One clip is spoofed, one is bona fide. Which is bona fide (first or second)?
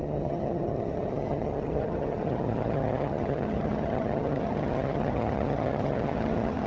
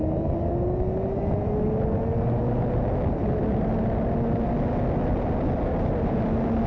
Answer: second